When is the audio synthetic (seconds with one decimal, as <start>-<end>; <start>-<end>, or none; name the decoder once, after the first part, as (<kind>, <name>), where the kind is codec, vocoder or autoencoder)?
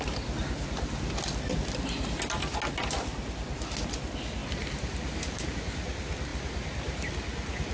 none